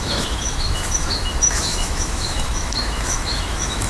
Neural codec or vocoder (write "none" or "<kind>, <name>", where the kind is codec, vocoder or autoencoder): autoencoder, DAC-VAE